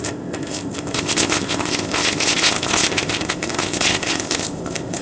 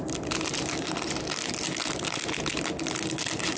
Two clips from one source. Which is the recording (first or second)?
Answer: second